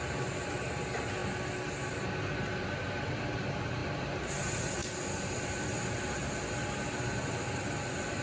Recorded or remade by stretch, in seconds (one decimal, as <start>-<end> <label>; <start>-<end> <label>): 0.0-8.2 recorded